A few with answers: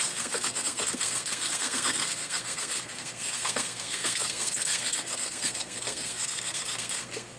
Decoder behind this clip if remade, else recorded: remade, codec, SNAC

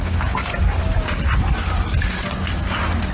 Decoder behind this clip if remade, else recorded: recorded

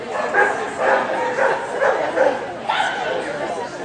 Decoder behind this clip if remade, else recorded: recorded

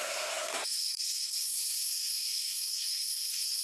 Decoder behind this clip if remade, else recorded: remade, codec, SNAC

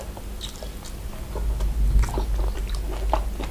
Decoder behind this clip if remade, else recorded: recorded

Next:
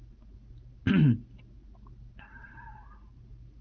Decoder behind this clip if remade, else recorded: recorded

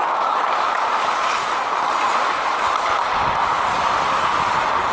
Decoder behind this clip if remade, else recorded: recorded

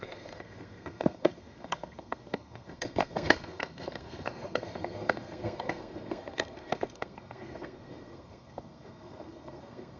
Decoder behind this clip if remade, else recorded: remade, codec, SNAC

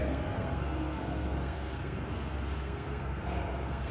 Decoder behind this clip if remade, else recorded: remade, codec, SNAC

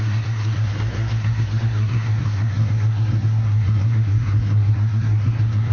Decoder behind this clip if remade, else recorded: remade, codec, SNAC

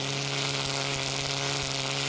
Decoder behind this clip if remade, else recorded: recorded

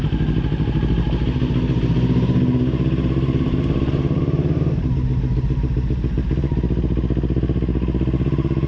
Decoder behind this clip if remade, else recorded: recorded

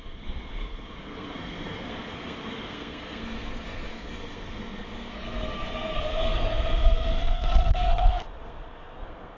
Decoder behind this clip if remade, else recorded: remade, codec, SNAC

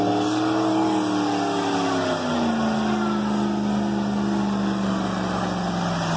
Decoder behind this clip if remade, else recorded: recorded